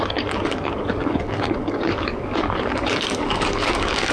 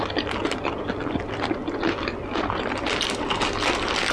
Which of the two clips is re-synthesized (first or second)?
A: first